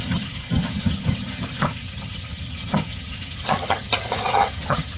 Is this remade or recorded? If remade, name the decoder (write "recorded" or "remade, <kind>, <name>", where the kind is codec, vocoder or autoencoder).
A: remade, vocoder, HiFi-GAN